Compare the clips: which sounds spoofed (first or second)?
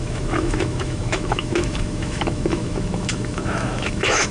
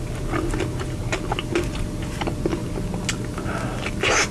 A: first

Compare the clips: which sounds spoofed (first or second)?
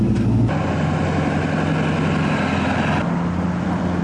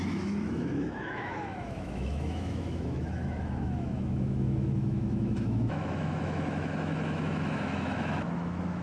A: second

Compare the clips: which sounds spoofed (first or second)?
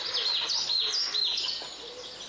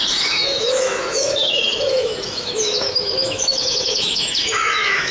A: second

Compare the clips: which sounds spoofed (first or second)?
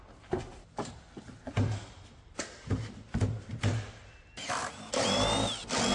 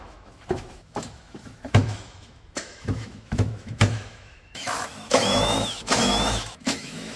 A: second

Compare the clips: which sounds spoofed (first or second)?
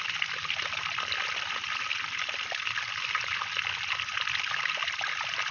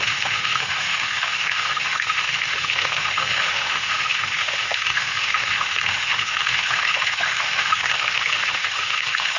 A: second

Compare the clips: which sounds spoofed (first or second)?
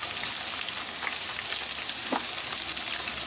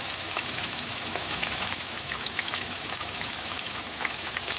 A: second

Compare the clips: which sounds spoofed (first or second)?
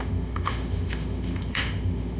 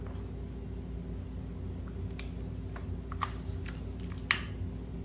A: first